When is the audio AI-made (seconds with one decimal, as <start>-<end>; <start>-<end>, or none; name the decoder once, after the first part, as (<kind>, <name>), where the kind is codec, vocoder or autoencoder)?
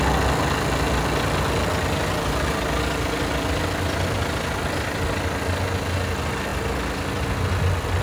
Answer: none